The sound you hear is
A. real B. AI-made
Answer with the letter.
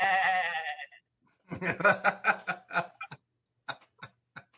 A